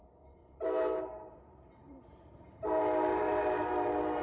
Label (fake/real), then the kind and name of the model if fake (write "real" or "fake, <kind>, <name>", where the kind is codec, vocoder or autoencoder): fake, vocoder, BigVGAN v2